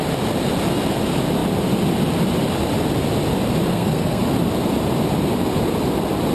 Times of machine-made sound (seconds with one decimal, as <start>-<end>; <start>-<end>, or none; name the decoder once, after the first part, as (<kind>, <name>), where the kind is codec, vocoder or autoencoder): 3.7-4.2 (codec, SNAC)